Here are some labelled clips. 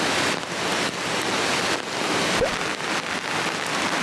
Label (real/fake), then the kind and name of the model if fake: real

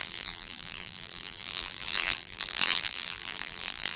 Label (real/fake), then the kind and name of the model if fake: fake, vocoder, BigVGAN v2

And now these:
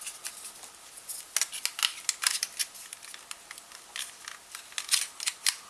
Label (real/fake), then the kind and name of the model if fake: real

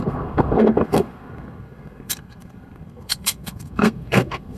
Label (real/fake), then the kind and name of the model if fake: fake, codec, SNAC